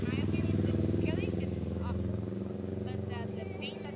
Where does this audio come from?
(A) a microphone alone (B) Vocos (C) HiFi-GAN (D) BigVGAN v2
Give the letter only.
A